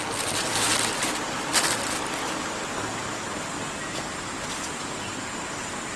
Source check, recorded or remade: recorded